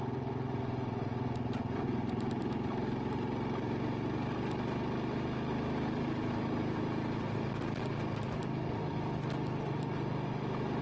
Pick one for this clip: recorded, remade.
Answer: recorded